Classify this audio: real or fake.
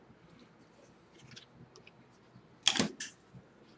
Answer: real